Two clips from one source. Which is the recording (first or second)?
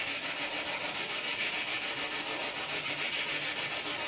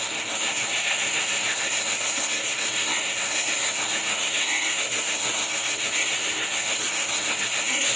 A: first